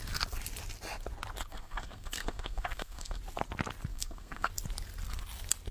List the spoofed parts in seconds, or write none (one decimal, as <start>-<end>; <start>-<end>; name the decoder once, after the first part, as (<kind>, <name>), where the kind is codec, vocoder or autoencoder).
1.5-3.2 (codec, SNAC); 3.9-4.5